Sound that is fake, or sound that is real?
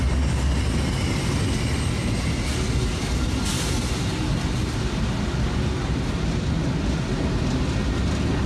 real